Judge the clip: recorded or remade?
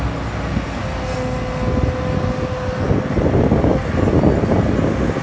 recorded